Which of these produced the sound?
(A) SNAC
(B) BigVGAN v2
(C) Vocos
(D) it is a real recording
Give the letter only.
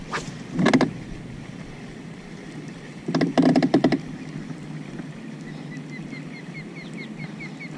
D